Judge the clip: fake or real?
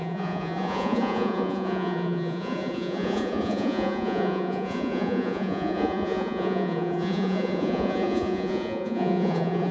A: fake